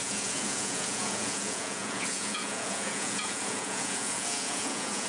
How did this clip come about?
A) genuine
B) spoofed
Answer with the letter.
B